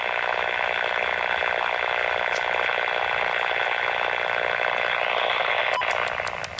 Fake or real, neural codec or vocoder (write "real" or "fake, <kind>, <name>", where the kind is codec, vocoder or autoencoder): real